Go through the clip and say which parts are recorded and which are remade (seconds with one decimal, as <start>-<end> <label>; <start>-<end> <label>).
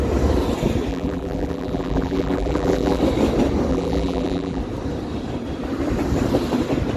0.0-0.9 recorded; 0.9-3.0 remade; 3.0-3.7 recorded; 3.7-4.6 remade; 4.6-7.0 recorded